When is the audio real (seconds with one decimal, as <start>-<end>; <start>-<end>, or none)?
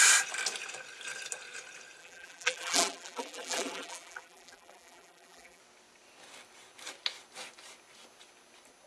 0.0-2.0; 5.6-8.9